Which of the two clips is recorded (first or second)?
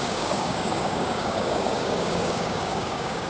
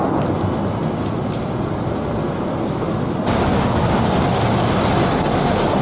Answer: second